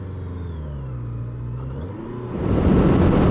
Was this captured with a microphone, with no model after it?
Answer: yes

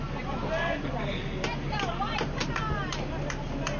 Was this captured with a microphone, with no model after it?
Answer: yes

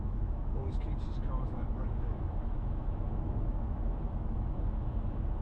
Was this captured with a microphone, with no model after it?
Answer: no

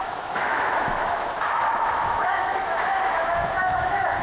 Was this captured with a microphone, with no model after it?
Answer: no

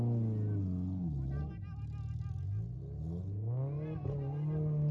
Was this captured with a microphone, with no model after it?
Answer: yes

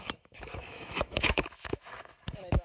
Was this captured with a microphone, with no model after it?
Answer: no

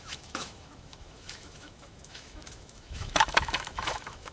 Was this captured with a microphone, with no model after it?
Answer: no